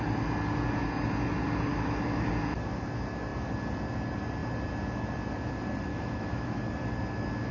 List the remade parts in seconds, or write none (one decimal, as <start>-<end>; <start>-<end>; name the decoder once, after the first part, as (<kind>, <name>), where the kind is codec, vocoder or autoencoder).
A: 1.7-2.3 (autoencoder, DAC-VAE); 5.9-6.6